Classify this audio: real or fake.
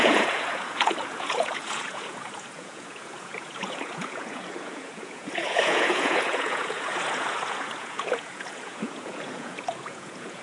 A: fake